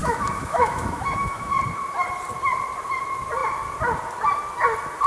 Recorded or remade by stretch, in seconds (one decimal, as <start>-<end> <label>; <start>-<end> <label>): 0.0-1.6 remade; 1.6-5.1 recorded